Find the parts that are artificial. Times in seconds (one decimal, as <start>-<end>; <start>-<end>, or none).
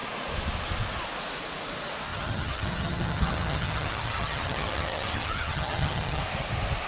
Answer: 2.1-6.2